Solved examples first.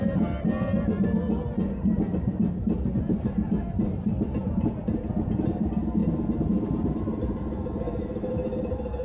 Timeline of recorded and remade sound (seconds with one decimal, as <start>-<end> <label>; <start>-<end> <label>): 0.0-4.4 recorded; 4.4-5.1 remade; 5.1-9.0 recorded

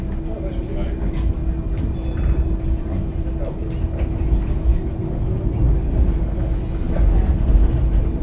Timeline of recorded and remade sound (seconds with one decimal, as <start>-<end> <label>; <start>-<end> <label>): 0.0-8.2 recorded

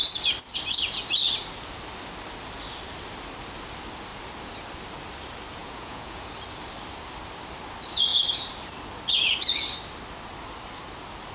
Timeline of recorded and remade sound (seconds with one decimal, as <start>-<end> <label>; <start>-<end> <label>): 0.0-5.6 recorded; 5.6-6.3 remade; 6.3-11.3 recorded

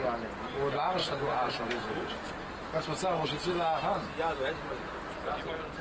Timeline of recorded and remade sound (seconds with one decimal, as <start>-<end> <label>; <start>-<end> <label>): 0.0-1.0 recorded; 1.0-2.1 remade; 2.1-5.8 recorded

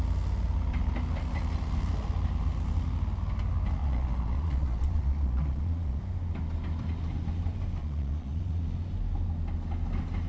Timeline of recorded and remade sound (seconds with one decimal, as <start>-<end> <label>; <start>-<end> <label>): 0.0-3.8 recorded; 3.8-6.0 remade; 6.0-7.8 recorded; 7.8-8.6 remade; 8.6-10.3 recorded